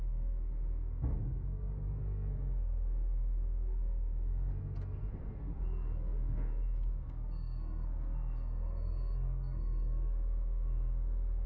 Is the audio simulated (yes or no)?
yes